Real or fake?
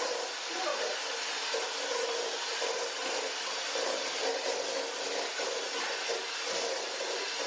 real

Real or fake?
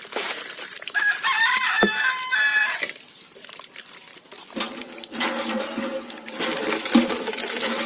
fake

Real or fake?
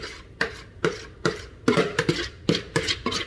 fake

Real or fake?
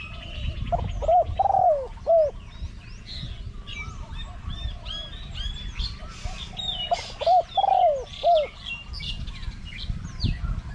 real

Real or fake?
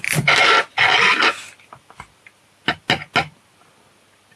real